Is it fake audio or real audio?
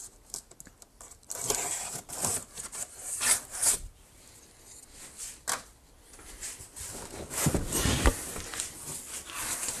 real